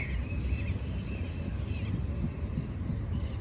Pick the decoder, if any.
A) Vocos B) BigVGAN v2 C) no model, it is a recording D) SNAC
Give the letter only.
C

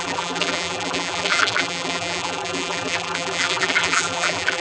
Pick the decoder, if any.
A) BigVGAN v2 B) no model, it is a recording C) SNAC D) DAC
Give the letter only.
A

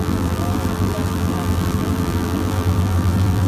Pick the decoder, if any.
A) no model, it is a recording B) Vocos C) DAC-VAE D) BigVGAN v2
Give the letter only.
D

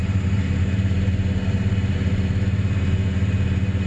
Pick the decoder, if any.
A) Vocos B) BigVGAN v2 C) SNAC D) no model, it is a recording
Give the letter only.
D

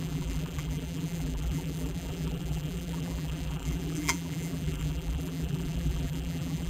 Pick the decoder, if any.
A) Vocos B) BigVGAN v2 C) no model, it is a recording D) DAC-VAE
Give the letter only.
B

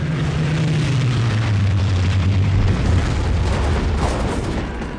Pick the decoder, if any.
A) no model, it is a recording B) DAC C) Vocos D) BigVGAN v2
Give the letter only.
A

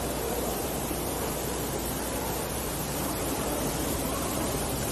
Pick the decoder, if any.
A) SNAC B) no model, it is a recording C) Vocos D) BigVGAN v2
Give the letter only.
D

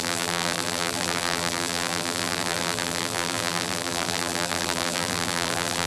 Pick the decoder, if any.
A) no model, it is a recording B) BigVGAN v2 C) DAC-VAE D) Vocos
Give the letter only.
B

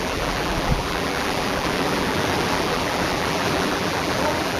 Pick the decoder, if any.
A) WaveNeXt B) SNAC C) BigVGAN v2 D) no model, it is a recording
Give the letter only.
C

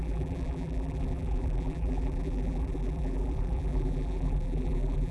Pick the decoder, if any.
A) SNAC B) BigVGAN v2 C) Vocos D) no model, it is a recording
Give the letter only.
B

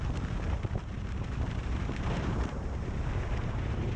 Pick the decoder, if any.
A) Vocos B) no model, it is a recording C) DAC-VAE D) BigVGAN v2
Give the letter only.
D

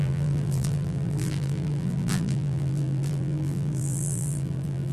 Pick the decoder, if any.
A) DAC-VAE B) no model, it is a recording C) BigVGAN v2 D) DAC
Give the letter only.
C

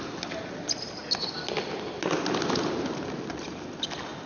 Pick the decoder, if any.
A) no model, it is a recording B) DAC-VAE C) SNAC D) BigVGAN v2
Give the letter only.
A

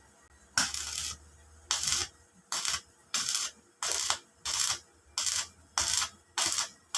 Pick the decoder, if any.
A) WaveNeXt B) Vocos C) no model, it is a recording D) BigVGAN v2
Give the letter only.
C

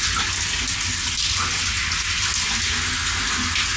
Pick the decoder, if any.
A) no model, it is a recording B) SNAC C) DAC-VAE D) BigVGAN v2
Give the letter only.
A